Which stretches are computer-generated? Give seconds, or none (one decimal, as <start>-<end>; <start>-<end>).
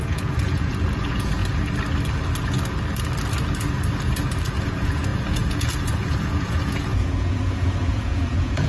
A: 0.0-1.4; 4.5-8.7